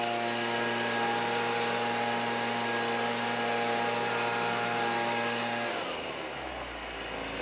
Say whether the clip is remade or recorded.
recorded